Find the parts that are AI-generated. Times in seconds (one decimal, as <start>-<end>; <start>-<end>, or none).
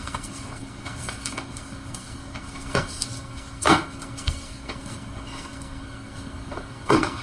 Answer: 0.0-7.2